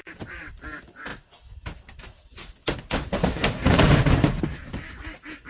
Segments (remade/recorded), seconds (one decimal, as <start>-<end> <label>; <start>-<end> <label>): 0.0-0.5 remade; 0.5-5.5 recorded